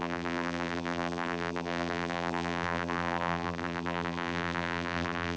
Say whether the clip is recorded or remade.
remade